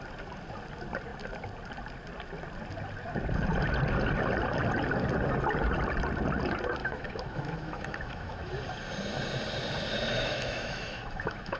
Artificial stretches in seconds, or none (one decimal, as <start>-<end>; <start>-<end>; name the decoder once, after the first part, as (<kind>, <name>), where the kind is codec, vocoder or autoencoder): 6.8-8.5 (autoencoder, DAC-VAE); 10.1-11.6